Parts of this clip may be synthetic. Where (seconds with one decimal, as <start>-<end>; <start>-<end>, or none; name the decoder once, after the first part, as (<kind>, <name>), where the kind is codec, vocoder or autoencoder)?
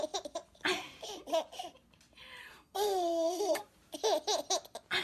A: 2.4-3.6 (codec, SNAC)